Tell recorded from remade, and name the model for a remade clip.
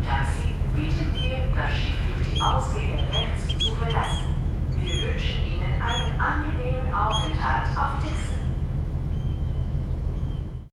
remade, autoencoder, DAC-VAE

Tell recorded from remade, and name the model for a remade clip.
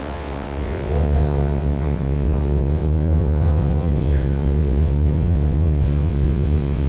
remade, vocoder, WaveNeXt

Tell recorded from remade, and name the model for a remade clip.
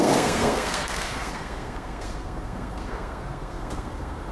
remade, codec, SNAC